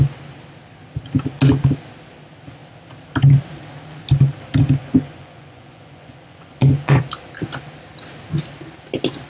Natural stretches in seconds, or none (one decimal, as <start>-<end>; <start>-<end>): 0.0-4.8; 7.1-9.3